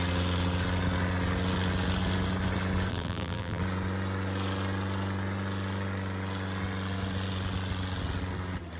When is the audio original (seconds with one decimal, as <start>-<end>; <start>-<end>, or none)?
0.0-2.9; 3.6-8.8